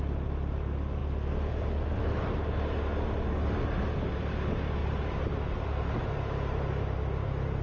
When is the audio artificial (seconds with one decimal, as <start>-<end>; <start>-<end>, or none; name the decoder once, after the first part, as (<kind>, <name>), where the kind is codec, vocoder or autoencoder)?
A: 4.8-5.8 (vocoder, BigVGAN v2)